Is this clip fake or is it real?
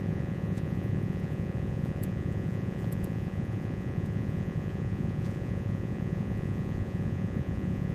fake